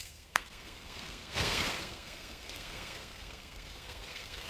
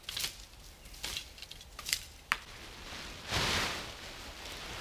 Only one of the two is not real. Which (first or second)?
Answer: first